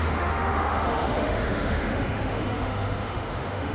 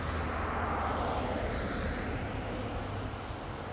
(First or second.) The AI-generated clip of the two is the first